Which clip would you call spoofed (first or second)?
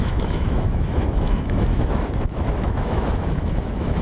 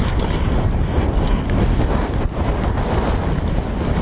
first